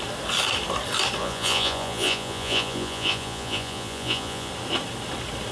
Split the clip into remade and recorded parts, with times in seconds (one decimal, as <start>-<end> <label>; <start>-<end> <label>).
0.0-1.2 recorded; 1.2-4.5 remade; 4.5-5.5 recorded